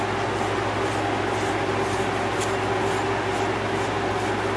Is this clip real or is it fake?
real